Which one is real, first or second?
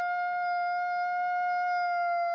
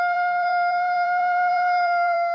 first